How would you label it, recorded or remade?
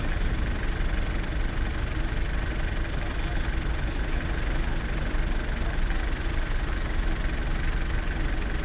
recorded